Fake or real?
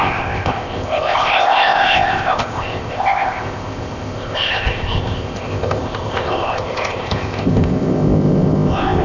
fake